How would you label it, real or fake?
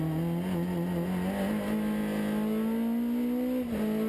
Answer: real